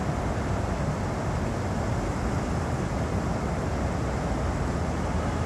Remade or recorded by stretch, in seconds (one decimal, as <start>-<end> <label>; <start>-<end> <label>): 0.0-5.5 recorded